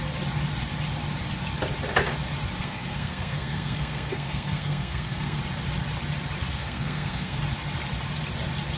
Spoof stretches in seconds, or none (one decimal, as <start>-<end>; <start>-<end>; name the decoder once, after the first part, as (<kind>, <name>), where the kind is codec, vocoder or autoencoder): 2.6-5.4 (codec, SNAC); 6.5-7.4